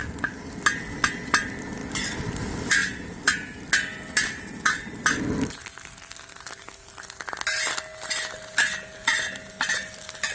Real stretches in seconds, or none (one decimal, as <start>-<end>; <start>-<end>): 0.0-10.3